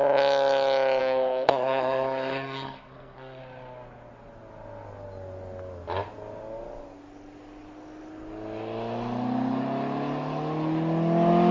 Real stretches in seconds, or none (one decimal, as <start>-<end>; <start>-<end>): 0.0-1.0; 3.4-11.5